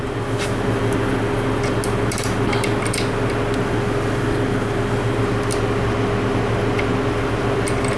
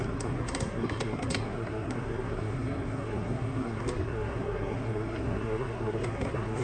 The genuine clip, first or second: first